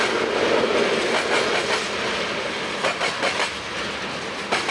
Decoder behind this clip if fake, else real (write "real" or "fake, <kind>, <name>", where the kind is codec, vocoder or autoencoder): real